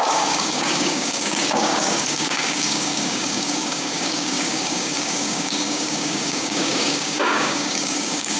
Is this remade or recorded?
remade